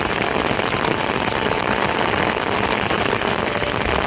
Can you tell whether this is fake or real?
real